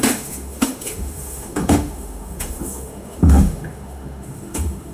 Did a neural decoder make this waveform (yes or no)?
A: yes